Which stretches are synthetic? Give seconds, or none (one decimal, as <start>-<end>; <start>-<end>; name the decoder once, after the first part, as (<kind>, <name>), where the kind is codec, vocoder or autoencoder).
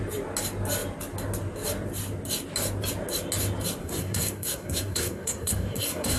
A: 3.8-6.2 (codec, SNAC)